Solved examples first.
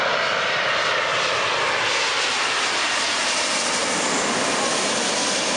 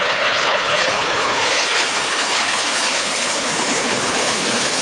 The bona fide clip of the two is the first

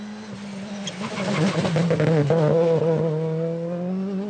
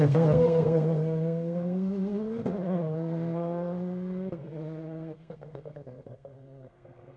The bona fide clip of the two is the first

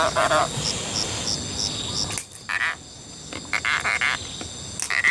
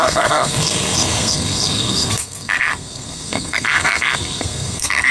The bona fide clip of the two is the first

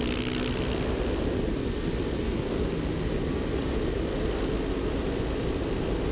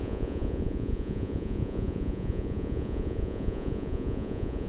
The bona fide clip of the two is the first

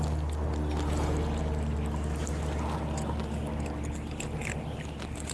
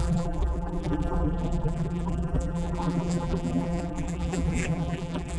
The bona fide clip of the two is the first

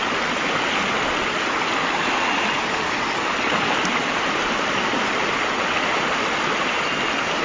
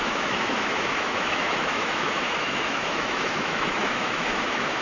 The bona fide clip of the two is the first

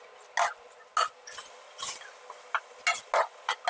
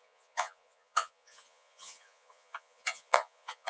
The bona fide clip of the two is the first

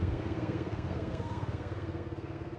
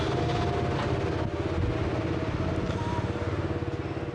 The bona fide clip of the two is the second